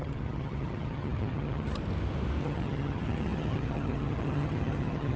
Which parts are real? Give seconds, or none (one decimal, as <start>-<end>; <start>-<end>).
1.8-2.4